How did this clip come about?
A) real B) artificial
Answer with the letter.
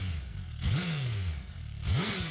B